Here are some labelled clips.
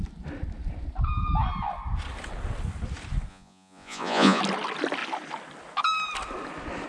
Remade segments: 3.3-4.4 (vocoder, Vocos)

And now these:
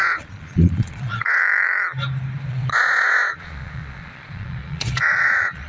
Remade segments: 0.0-1.4 (vocoder, Vocos); 2.5-5.7

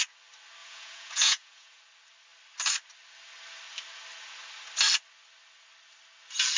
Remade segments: 0.6-1.8 (vocoder, Vocos)

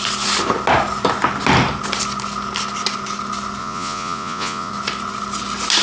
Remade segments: 3.6-4.7 (vocoder, Vocos)

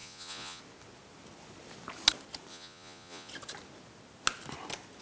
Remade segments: 0.0-0.6 (vocoder, Vocos); 2.5-3.3